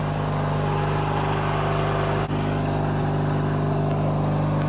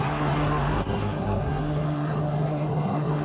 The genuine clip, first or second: first